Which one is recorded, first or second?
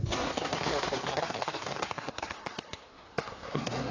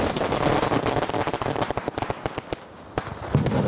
second